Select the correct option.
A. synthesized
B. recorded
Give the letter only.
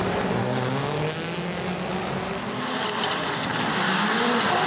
B